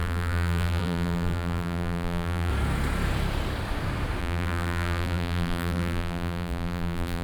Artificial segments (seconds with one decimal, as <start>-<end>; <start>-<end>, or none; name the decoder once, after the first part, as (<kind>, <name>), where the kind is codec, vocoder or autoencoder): 0.0-2.5 (vocoder, BigVGAN v2); 4.2-7.2